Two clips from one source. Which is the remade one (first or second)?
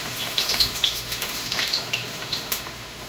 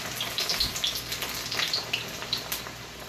first